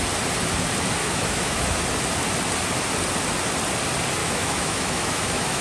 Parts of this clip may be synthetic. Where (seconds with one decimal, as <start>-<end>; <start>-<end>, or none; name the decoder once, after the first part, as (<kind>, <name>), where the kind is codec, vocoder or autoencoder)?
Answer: 1.0-1.8 (autoencoder, DAC-VAE); 4.2-5.6